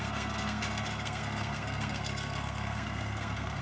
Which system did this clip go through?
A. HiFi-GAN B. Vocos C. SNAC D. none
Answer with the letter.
C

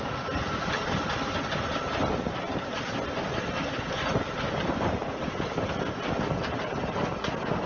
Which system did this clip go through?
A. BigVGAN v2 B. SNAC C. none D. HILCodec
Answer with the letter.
C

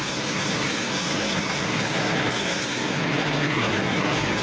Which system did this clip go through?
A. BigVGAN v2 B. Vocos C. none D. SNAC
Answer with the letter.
D